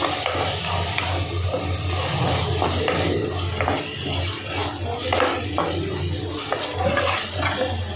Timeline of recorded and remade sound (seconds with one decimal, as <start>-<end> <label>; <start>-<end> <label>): 0.0-8.0 recorded